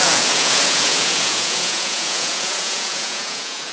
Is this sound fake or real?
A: fake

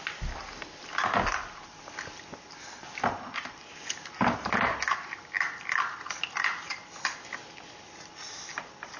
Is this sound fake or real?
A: real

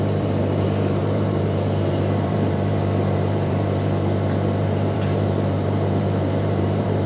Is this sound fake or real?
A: fake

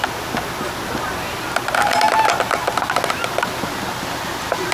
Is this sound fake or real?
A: real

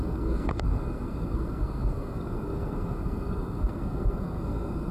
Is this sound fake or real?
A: fake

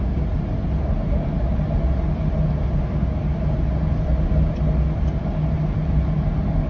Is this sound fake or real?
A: real